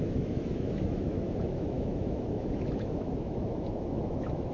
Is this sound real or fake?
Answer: fake